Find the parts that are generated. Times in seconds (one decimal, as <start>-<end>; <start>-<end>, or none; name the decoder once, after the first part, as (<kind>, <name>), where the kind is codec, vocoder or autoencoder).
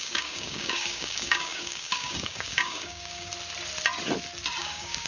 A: 0.0-3.3 (codec, DAC); 4.6-5.1